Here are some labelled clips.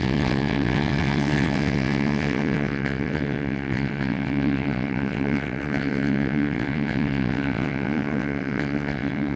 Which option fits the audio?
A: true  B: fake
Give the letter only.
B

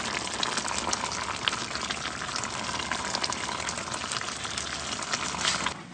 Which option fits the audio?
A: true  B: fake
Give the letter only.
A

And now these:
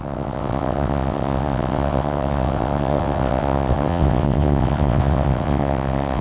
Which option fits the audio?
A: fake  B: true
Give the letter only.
A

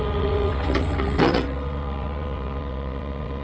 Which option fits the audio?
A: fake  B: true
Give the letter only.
A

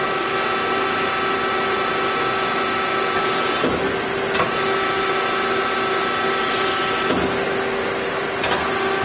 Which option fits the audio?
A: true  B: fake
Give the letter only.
A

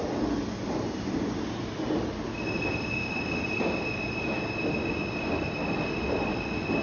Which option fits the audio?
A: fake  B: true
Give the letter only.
B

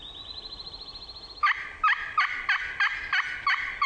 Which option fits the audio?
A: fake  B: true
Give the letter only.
B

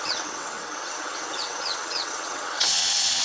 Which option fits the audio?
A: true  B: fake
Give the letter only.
B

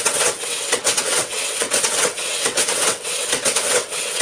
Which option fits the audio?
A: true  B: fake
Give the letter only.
B